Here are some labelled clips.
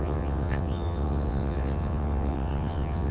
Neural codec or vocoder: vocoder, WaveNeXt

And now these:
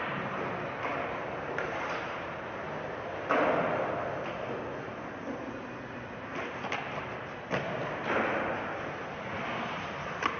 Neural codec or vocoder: none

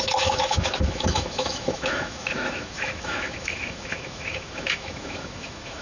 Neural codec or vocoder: autoencoder, DAC-VAE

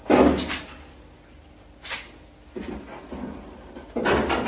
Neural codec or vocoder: none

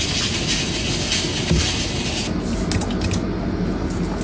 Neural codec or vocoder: none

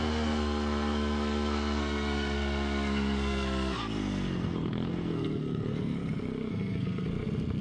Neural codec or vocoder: codec, SNAC